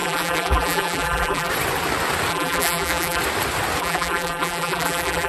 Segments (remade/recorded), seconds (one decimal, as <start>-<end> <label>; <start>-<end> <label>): 0.0-1.5 remade; 1.5-2.3 recorded; 2.3-3.2 remade; 3.2-3.8 recorded; 3.8-5.3 remade